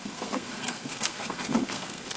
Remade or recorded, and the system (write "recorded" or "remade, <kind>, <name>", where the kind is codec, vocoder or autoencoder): remade, codec, SNAC